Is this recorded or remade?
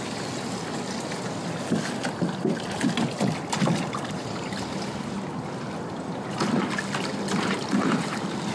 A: recorded